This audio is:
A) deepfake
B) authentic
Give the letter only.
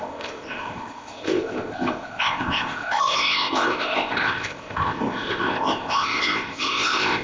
A